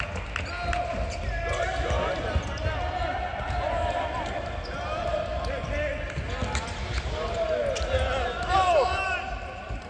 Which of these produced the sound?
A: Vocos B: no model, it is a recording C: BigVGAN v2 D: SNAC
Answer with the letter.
B